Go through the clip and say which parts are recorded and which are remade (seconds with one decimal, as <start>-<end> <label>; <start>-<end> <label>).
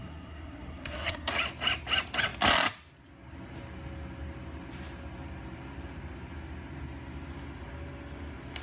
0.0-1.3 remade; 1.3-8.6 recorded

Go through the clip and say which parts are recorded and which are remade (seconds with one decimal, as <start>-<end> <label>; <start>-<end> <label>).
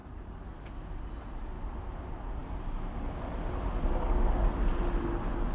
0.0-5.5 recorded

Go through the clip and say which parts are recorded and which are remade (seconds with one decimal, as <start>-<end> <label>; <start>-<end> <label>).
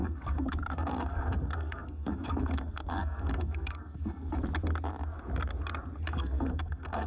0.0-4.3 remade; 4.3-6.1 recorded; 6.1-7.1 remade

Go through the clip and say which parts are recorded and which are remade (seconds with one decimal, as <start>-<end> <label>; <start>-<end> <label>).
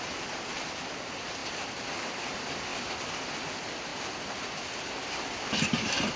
0.0-2.7 recorded; 2.7-3.5 remade; 3.5-3.9 recorded; 3.9-6.2 remade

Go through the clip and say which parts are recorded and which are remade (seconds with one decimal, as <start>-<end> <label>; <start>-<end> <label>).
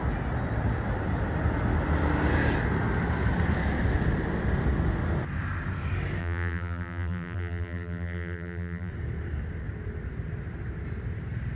0.0-6.2 recorded; 6.2-8.9 remade; 8.9-11.5 recorded